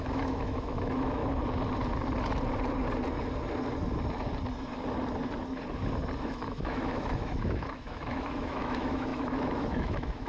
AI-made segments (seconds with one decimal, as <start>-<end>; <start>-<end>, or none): 0.0-1.2; 6.2-10.3